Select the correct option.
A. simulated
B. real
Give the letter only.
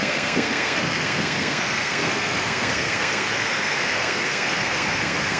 A